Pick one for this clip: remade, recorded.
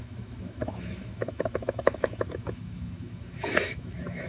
remade